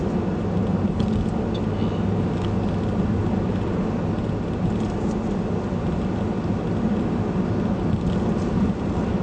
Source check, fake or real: real